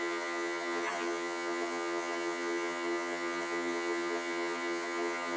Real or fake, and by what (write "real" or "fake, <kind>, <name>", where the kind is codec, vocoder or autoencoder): fake, vocoder, HiFi-GAN